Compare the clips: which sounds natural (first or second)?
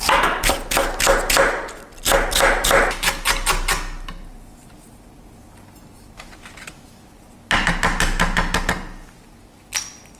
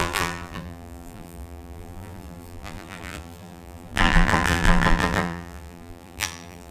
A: first